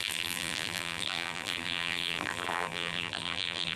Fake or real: fake